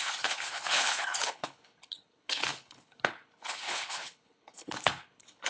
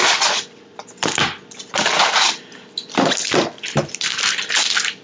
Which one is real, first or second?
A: second